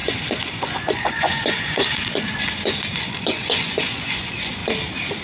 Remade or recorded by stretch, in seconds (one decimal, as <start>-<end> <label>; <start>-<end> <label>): 0.0-4.6 remade; 4.6-5.2 recorded